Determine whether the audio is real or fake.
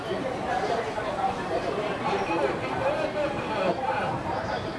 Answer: fake